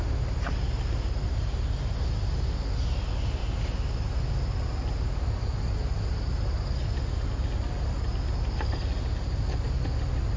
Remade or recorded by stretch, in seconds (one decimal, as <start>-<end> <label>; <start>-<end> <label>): 0.0-10.4 recorded

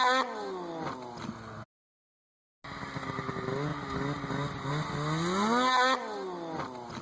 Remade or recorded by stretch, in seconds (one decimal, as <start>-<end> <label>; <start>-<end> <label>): 0.0-7.0 recorded